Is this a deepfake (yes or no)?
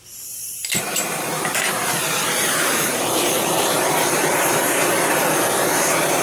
yes